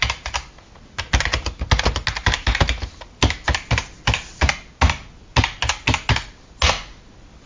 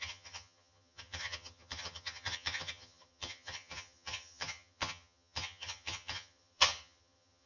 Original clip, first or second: first